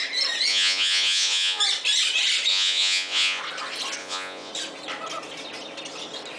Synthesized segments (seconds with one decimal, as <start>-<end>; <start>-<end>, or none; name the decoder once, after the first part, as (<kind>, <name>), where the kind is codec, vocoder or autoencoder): 0.5-1.6 (vocoder, Vocos); 2.5-3.4; 4.0-4.5